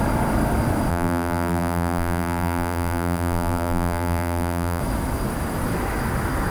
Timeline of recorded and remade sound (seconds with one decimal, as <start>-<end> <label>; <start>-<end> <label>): 0.0-0.9 recorded; 0.9-4.8 remade; 4.8-6.5 recorded